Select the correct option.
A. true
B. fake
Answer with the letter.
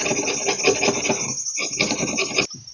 A